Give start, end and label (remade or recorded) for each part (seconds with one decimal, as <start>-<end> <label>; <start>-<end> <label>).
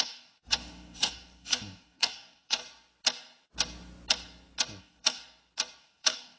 0.0-2.6 remade; 2.6-4.8 recorded; 4.8-5.2 remade; 5.2-5.8 recorded; 5.8-6.4 remade